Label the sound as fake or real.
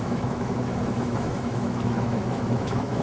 fake